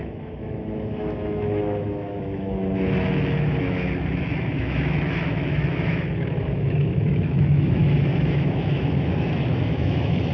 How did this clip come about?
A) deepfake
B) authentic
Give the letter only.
A